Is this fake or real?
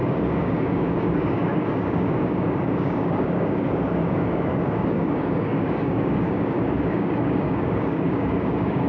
fake